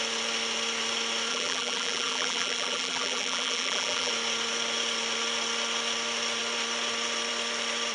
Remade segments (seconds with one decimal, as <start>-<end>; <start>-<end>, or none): 1.3-4.1